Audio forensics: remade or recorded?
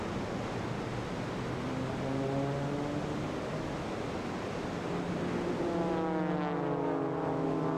recorded